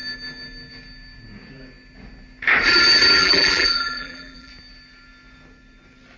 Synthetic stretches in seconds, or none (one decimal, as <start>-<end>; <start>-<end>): 3.2-4.5